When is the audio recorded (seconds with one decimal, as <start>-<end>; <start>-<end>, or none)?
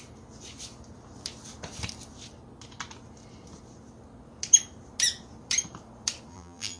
0.0-6.3